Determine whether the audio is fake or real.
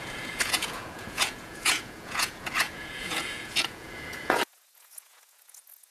fake